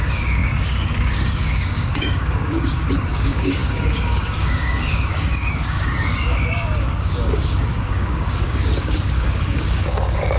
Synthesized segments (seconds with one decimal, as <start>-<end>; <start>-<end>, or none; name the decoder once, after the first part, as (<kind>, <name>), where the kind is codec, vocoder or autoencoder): 0.0-10.4 (codec, DAC)